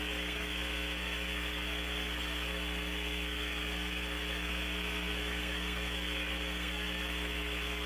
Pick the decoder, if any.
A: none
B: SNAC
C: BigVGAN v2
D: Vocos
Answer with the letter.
B